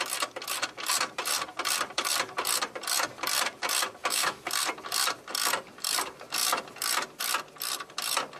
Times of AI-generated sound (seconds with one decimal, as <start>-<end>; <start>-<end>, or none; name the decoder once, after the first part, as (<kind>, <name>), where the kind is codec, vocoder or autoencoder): 4.0-4.5 (autoencoder, DAC-VAE)